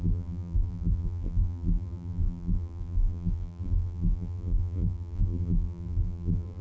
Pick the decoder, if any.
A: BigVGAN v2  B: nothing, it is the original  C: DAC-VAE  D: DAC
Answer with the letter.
A